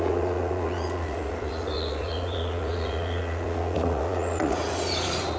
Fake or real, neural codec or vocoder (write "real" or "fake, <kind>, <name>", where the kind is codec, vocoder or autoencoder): fake, vocoder, Vocos